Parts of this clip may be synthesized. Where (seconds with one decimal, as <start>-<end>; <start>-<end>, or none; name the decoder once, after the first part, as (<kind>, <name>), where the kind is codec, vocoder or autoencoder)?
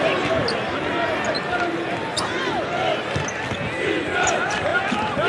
none